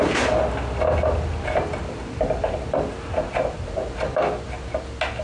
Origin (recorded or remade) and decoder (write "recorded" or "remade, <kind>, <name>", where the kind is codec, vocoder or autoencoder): recorded